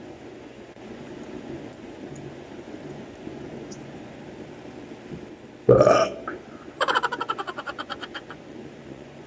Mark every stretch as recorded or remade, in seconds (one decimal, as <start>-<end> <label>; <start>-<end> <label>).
0.0-4.2 remade; 4.2-6.3 recorded; 6.3-9.3 remade